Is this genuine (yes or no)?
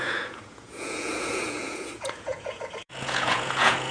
no